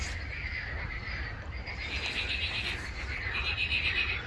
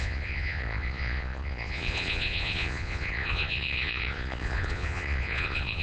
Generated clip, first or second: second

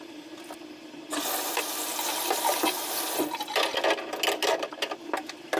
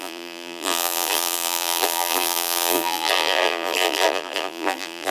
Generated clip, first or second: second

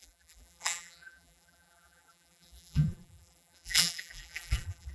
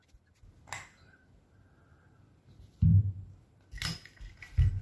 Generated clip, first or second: first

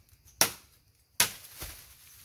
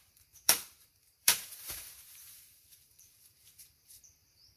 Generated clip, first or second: second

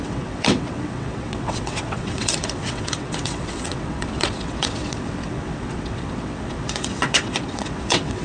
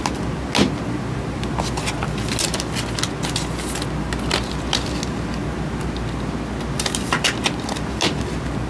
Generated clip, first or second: first